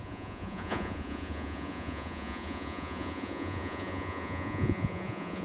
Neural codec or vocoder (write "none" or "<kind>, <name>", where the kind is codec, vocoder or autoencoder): vocoder, Vocos